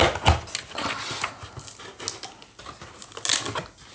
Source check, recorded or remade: recorded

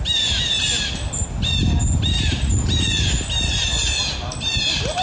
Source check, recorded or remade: recorded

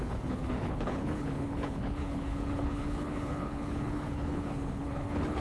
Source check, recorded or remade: remade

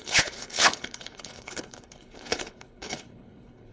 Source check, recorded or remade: remade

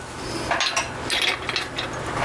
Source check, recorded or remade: recorded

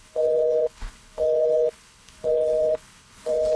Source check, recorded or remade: remade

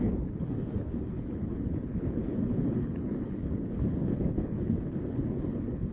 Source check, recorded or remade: remade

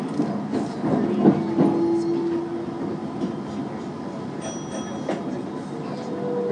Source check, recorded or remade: recorded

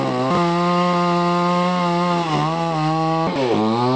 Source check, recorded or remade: recorded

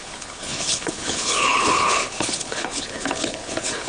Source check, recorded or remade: remade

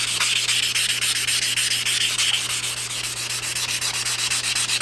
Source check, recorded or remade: recorded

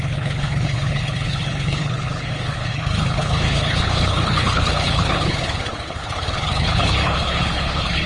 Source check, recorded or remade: remade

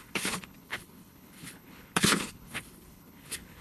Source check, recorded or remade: remade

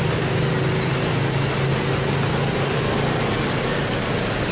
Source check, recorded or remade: recorded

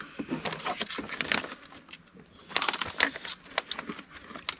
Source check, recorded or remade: recorded